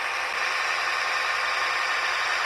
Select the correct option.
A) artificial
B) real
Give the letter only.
B